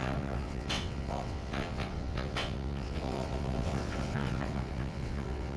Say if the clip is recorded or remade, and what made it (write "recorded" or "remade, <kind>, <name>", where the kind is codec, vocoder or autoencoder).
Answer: remade, vocoder, WaveNeXt